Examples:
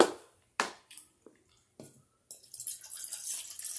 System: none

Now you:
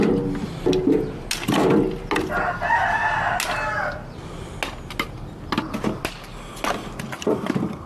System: none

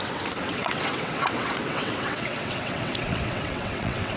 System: vocoder, WaveNeXt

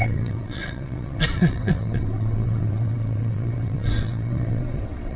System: vocoder, WaveNeXt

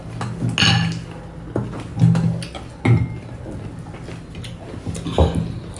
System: none